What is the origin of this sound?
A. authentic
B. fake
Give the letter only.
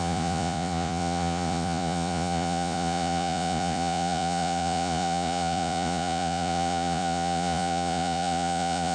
B